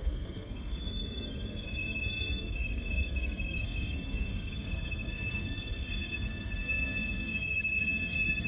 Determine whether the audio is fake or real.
fake